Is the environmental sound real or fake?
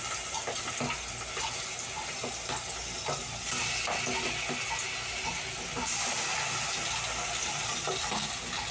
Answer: real